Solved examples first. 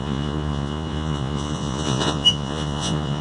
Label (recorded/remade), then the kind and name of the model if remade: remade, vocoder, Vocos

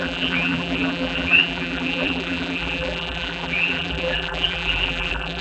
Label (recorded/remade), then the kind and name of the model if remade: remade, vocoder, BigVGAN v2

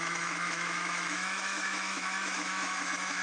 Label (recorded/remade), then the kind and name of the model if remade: remade, autoencoder, DAC-VAE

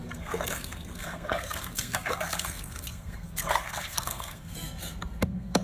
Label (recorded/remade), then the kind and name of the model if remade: remade, codec, SNAC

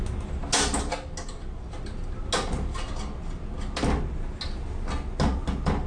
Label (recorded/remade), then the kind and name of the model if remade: recorded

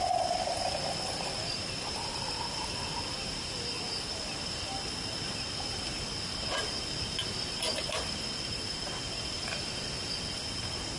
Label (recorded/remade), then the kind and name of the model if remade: recorded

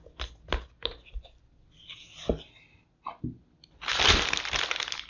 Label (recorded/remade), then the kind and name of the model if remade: recorded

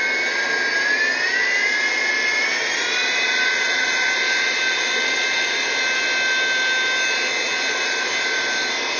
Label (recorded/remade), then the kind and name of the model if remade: recorded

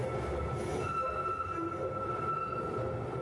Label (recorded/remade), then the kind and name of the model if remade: recorded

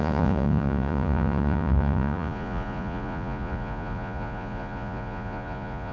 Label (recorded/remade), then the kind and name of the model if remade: remade, vocoder, Vocos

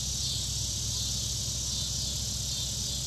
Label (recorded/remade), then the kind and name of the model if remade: recorded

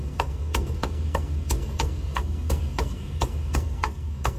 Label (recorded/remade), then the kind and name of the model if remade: remade, codec, SNAC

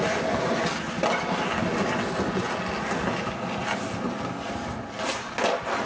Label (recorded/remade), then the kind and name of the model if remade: recorded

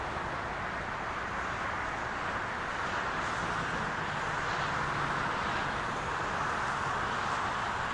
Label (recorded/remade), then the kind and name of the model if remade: recorded